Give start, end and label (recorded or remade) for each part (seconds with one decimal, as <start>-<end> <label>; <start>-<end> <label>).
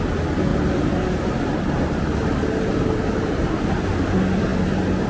0.0-0.5 recorded; 0.5-3.6 remade; 3.6-5.1 recorded